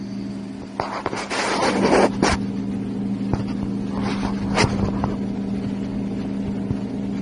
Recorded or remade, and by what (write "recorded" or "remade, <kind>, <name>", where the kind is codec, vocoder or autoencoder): recorded